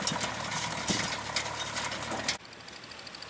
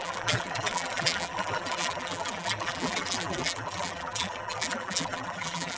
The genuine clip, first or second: first